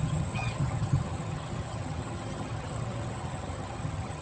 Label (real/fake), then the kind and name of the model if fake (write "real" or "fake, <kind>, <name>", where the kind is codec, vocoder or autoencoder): fake, vocoder, HiFi-GAN